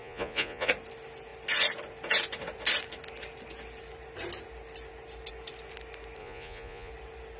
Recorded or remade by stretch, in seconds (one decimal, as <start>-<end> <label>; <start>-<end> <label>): 0.0-0.7 remade; 0.7-6.2 recorded; 6.2-6.9 remade; 6.9-7.4 recorded